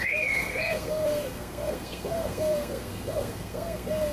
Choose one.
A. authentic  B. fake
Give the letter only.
B